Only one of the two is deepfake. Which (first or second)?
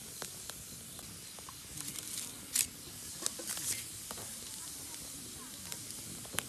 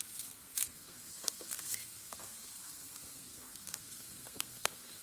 second